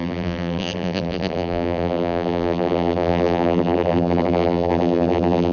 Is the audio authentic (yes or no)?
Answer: no